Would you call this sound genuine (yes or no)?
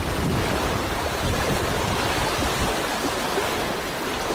yes